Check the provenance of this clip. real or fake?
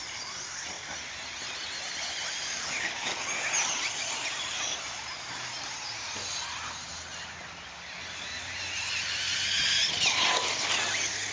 real